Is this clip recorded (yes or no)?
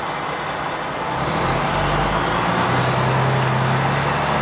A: yes